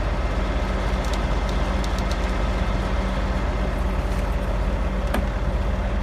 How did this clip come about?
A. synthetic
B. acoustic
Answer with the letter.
B